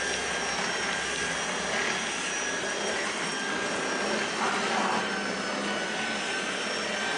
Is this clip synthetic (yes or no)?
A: no